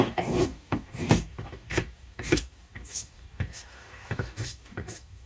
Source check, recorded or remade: remade